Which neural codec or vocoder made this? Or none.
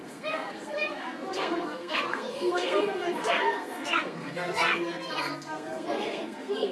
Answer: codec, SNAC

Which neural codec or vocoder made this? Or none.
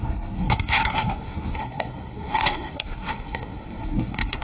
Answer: codec, SNAC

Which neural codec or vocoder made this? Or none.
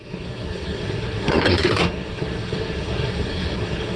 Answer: codec, SNAC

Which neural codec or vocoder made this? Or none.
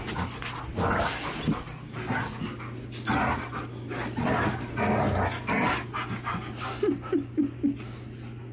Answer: none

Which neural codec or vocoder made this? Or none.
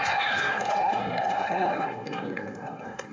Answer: codec, SNAC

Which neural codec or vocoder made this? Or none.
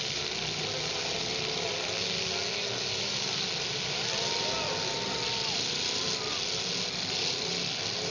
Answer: none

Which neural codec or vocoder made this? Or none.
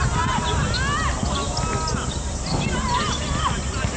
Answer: none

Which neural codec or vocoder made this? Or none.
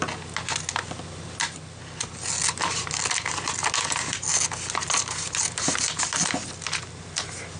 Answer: none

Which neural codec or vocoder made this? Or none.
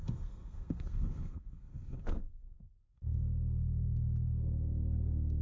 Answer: codec, SNAC